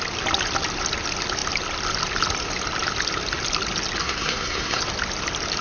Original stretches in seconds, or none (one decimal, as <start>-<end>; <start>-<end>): 0.0-4.0; 4.8-5.6